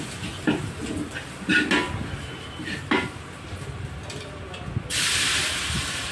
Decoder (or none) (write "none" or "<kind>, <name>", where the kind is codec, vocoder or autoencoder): none